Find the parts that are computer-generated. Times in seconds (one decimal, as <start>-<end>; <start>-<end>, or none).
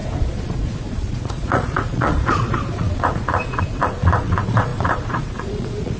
0.0-6.0